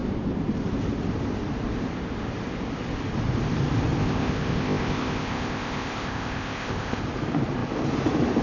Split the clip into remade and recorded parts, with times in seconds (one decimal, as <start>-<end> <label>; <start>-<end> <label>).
0.0-4.0 recorded; 4.0-7.0 remade; 7.0-8.4 recorded